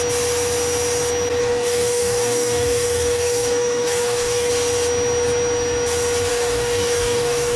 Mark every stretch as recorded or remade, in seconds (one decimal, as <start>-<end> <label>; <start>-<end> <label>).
0.0-1.4 recorded; 1.4-4.5 remade; 4.5-6.3 recorded; 6.3-7.6 remade